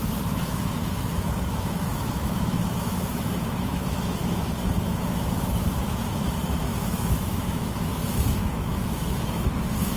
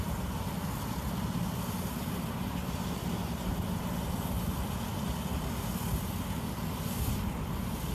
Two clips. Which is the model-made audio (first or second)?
first